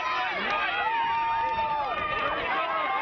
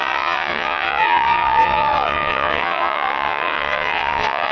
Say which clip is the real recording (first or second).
first